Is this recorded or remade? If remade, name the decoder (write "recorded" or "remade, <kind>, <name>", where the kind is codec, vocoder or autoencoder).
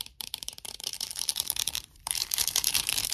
remade, vocoder, BigVGAN v2